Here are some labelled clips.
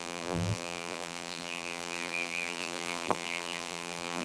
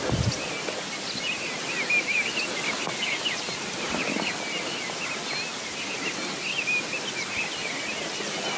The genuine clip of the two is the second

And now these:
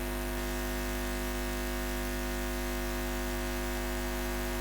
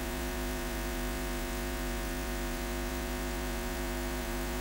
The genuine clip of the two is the first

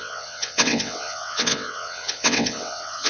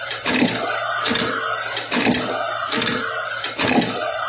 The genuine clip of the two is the second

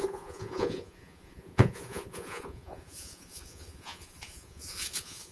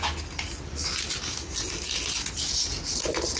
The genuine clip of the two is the second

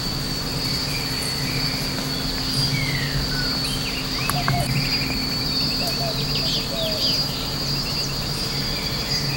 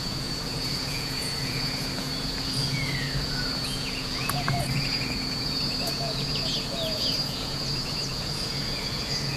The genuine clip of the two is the first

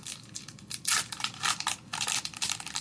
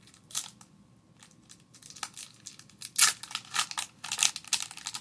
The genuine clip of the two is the second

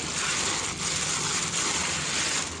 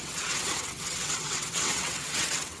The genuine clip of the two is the first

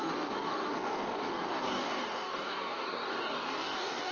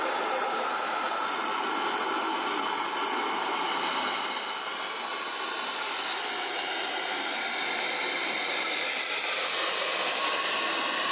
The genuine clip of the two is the second